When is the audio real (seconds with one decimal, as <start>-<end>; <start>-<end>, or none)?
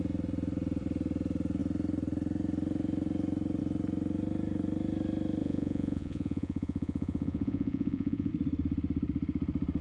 0.0-5.4; 8.3-9.8